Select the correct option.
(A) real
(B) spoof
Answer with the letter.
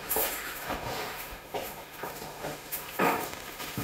B